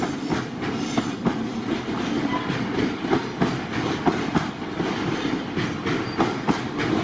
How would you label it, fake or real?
real